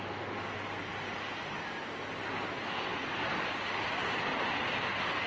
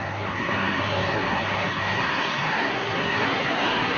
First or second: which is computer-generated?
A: second